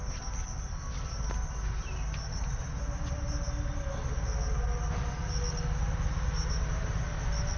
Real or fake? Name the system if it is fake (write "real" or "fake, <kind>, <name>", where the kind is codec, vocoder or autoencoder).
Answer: real